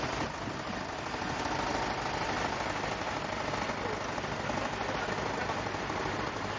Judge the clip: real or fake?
real